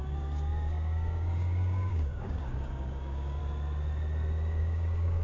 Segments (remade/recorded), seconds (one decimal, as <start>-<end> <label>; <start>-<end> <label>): 0.0-3.4 remade; 3.4-4.6 recorded; 4.6-5.2 remade

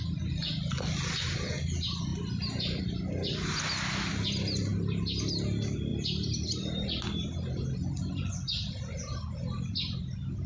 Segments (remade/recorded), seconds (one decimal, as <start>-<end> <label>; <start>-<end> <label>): 0.0-10.5 recorded

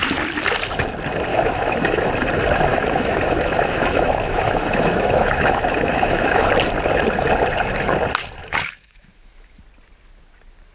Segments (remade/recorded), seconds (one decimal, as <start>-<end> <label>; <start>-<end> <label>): 0.0-1.3 recorded; 1.3-2.1 remade; 2.1-2.7 recorded; 2.7-6.5 remade; 6.5-8.4 recorded; 8.4-9.6 remade; 9.6-10.7 recorded

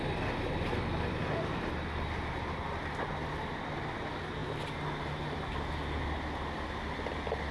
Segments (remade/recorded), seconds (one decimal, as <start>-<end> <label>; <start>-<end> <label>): 0.0-7.5 recorded

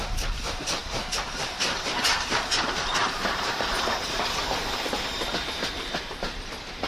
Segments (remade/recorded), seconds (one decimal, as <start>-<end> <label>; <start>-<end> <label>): 0.0-3.0 recorded; 3.0-6.9 remade

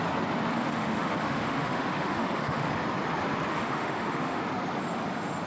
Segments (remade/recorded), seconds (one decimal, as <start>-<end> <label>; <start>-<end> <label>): 0.0-0.5 recorded; 0.5-2.7 remade; 2.7-3.5 recorded; 3.5-4.4 remade; 4.4-5.5 recorded

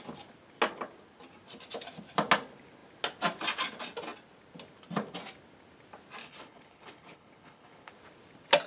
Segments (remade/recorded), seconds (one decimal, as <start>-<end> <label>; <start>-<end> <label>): 0.0-6.2 recorded; 6.2-7.9 remade; 7.9-8.7 recorded

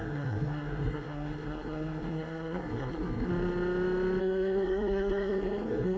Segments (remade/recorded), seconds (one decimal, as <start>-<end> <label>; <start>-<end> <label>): 0.0-3.3 remade; 3.3-4.2 recorded; 4.2-6.0 remade